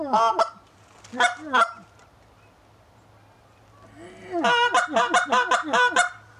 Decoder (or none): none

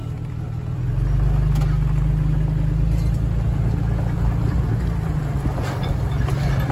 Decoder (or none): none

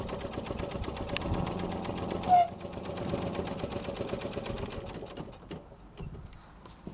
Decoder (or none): none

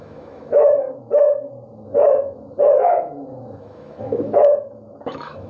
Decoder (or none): autoencoder, DAC-VAE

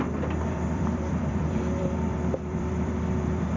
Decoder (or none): vocoder, BigVGAN v2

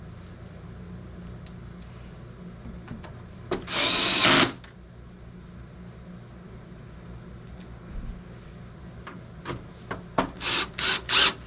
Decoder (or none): none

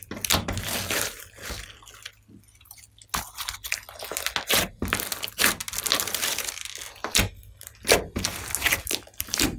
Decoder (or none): none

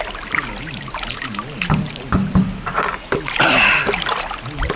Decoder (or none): none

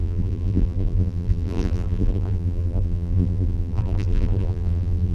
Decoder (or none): vocoder, BigVGAN v2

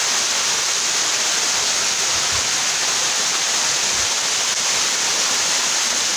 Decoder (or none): none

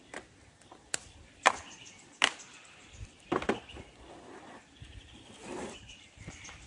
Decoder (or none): vocoder, BigVGAN v2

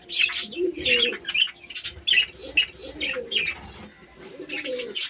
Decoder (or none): none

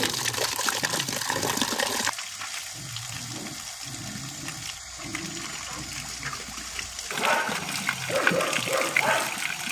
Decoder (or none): none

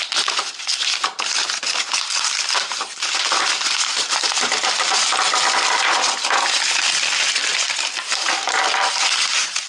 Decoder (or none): none